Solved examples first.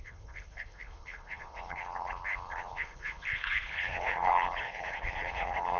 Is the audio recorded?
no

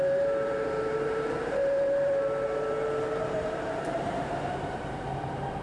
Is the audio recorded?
no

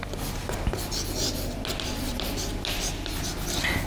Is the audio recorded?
yes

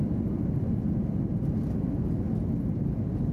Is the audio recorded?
yes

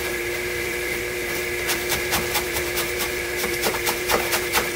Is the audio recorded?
no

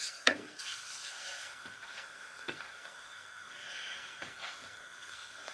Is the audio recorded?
no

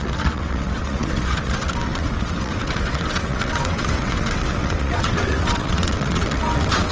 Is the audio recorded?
no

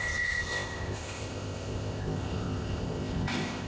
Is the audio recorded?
no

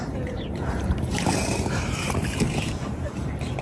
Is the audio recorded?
no